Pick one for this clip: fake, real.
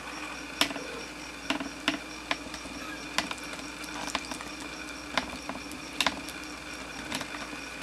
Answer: real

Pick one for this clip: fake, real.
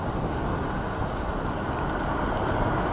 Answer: real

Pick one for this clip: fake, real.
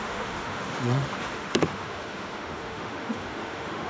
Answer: fake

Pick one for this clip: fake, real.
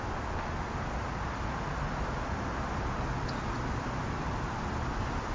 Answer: real